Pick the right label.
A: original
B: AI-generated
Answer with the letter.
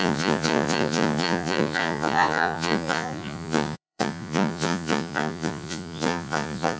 B